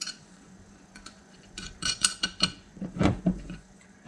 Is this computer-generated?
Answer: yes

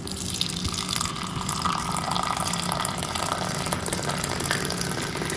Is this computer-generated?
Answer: no